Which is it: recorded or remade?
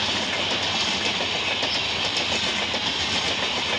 recorded